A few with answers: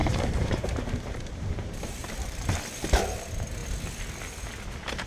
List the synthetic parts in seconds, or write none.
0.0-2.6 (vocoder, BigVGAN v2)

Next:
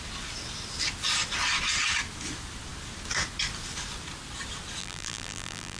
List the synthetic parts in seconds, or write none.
4.8-5.8 (vocoder, BigVGAN v2)

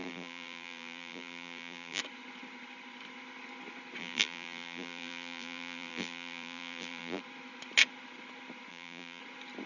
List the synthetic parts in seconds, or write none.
0.0-2.0 (vocoder, BigVGAN v2); 4.0-7.2; 8.7-9.2

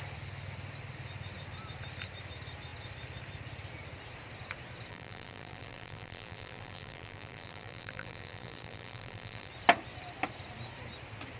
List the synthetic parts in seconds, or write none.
4.9-9.5 (vocoder, BigVGAN v2)